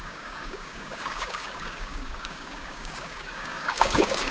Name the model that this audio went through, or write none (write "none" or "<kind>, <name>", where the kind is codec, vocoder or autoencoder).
codec, DAC